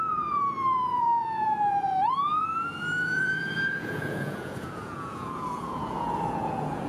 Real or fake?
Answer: fake